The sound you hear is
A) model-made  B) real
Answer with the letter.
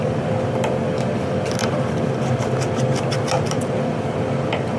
B